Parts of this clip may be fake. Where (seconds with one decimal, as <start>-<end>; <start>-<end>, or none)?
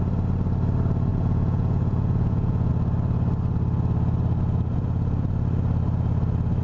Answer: 1.1-2.7; 4.7-5.3